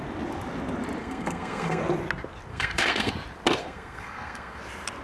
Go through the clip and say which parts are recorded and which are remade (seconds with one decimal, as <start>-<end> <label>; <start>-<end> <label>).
0.0-1.0 recorded; 1.0-1.8 remade; 1.8-2.5 recorded; 2.5-3.1 remade; 3.1-3.6 recorded; 3.6-4.6 remade; 4.6-5.0 recorded